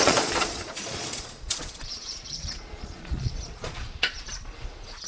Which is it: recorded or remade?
remade